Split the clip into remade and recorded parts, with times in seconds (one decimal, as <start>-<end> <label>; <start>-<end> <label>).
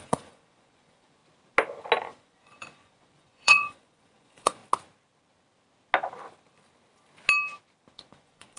0.0-1.2 remade; 1.2-2.0 recorded; 2.0-4.6 remade; 4.6-7.9 recorded; 7.9-8.6 remade